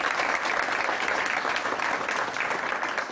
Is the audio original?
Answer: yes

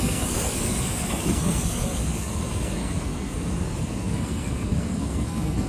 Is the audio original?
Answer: no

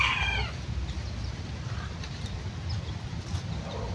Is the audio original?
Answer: yes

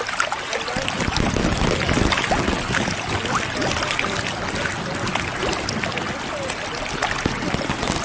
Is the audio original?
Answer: yes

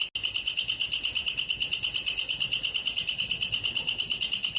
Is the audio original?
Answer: yes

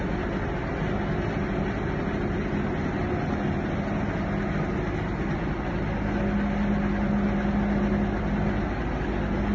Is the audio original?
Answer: yes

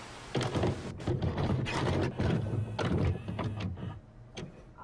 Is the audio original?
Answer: yes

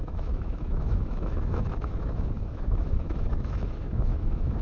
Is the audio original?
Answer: no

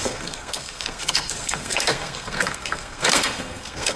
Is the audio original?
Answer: no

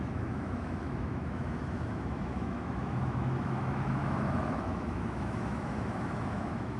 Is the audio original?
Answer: no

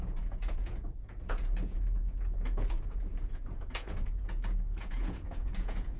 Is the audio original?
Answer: no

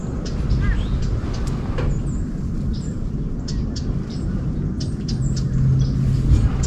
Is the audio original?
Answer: yes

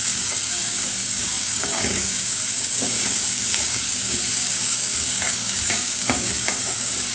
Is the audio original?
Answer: no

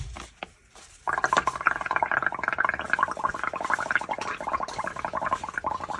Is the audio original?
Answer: yes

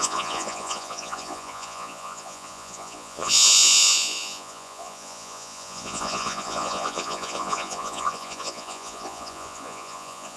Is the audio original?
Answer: no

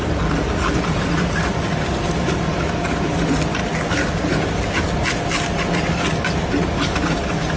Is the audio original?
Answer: yes